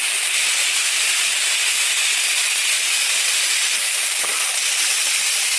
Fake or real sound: real